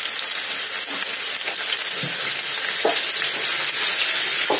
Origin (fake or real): real